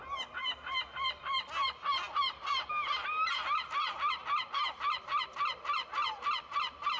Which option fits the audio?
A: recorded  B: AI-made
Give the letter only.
A